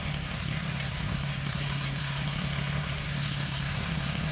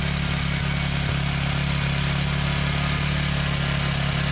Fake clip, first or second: first